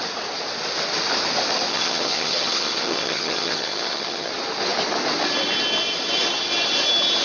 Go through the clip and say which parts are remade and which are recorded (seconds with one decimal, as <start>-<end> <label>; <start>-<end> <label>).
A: 0.0-1.7 recorded; 1.7-4.3 remade; 4.3-7.2 recorded

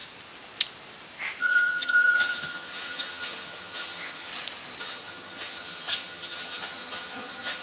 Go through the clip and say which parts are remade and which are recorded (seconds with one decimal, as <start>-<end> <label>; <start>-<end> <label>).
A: 0.0-1.4 recorded; 1.4-4.3 remade; 4.3-4.8 recorded; 4.8-7.6 remade

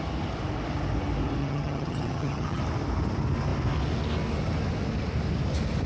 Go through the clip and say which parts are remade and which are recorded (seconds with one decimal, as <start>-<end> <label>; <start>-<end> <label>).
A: 0.0-1.4 recorded; 1.4-2.6 remade; 2.6-5.9 recorded

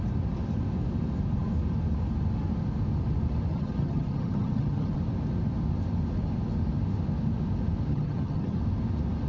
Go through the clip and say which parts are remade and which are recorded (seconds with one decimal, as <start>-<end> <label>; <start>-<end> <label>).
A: 0.0-3.5 recorded; 3.5-5.0 remade; 5.0-7.9 recorded; 7.9-8.6 remade; 8.6-9.3 recorded

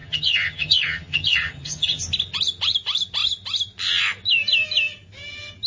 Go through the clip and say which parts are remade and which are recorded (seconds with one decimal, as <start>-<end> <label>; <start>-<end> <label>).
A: 0.0-2.0 remade; 2.0-5.7 recorded

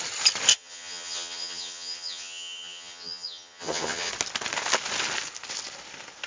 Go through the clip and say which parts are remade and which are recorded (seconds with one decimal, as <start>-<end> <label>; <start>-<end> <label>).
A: 0.0-0.5 recorded; 0.5-4.1 remade; 4.1-6.3 recorded

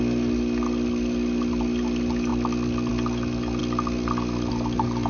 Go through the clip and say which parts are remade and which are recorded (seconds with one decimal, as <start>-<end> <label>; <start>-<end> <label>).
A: 0.0-5.1 recorded

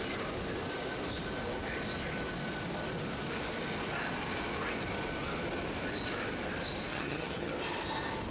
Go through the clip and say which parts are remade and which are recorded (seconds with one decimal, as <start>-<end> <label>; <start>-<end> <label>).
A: 0.0-6.9 recorded; 6.9-7.5 remade; 7.5-8.3 recorded